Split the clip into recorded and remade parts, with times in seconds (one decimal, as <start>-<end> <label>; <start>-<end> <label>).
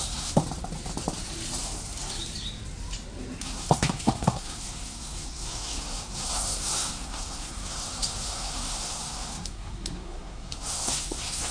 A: 0.0-0.4 remade; 0.4-3.4 recorded; 3.4-11.5 remade